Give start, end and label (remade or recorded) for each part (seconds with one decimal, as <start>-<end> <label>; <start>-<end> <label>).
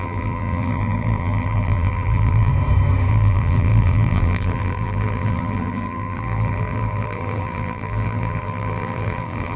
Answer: 0.0-2.5 remade; 2.5-3.1 recorded; 3.1-9.6 remade